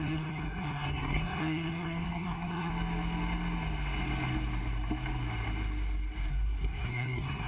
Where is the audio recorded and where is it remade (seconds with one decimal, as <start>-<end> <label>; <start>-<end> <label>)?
0.0-2.7 remade; 2.7-6.3 recorded; 6.3-7.5 remade